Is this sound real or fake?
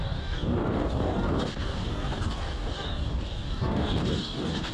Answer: fake